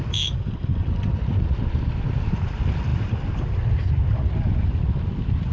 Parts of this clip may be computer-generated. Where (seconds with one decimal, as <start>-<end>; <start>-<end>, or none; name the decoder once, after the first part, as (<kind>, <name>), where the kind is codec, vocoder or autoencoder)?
none